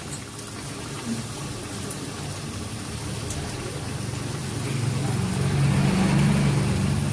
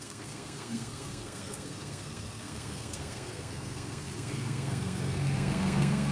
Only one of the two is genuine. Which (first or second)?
first